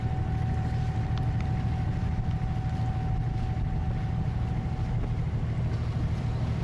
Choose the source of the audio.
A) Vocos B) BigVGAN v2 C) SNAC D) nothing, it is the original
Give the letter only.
D